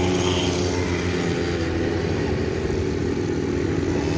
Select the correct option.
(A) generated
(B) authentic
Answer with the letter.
B